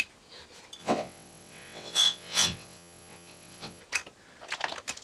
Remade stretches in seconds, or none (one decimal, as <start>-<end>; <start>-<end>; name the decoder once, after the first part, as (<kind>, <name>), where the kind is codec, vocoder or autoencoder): 0.8-3.8 (vocoder, WaveNeXt)